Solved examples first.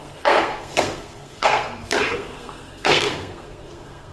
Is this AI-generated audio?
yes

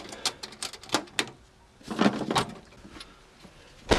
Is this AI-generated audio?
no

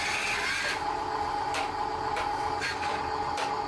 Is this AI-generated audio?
no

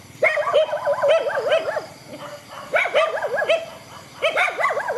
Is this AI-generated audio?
no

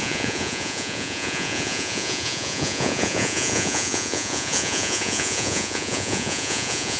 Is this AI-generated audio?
yes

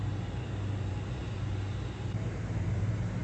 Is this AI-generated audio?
yes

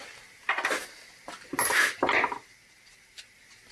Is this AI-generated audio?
no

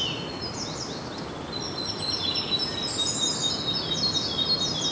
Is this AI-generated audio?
no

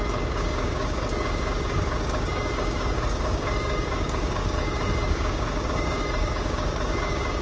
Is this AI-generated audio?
yes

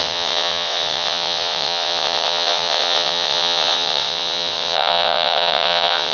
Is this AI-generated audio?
yes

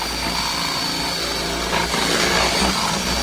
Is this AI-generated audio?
no